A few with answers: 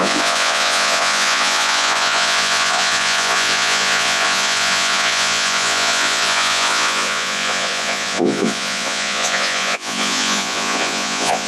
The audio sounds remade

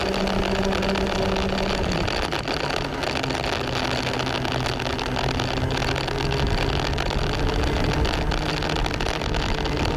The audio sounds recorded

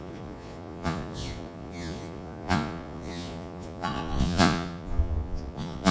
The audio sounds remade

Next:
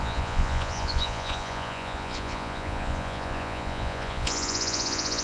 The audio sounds remade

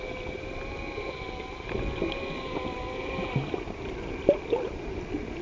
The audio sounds recorded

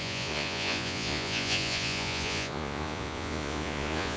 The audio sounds remade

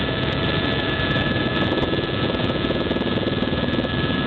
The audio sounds remade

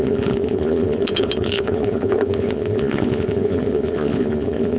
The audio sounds remade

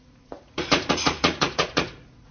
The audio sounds remade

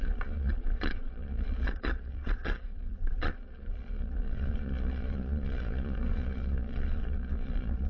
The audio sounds remade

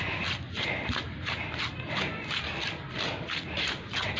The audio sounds recorded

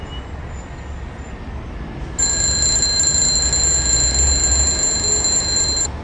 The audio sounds recorded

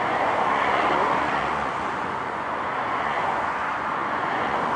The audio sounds remade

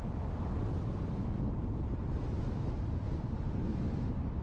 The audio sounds recorded